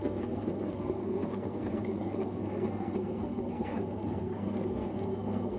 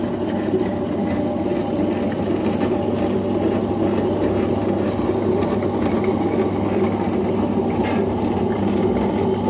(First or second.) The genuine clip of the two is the second